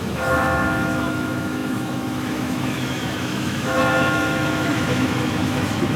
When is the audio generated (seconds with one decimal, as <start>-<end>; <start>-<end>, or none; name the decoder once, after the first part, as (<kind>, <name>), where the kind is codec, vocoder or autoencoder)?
0.0-6.0 (autoencoder, DAC-VAE)